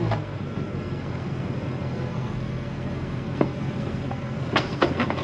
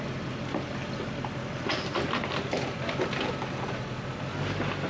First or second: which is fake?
first